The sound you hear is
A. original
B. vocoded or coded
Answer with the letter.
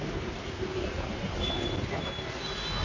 A